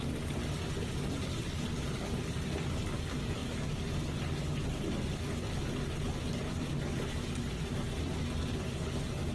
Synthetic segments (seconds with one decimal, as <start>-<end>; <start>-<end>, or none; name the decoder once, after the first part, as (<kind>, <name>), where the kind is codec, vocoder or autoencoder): none